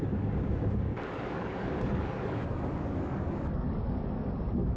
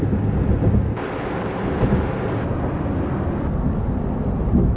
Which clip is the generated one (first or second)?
first